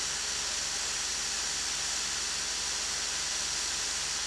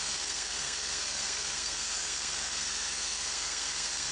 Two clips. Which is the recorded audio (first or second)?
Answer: first